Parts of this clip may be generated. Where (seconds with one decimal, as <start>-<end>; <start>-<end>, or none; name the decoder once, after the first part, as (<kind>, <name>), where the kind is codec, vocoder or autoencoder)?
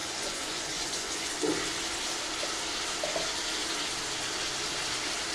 0.0-1.3 (vocoder, Vocos)